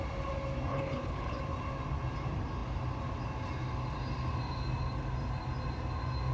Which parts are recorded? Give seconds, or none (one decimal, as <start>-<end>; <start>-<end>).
0.0-0.7; 1.4-6.3